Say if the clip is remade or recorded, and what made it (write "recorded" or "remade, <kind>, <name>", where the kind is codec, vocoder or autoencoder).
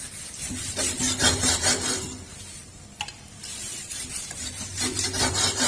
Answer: remade, vocoder, BigVGAN v2